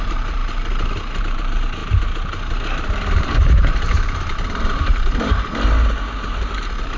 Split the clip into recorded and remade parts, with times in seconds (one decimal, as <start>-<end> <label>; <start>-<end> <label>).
0.0-0.4 remade; 0.4-1.2 recorded; 1.2-1.8 remade; 1.8-3.2 recorded; 3.2-7.0 remade